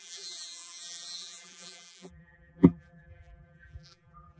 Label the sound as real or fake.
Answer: fake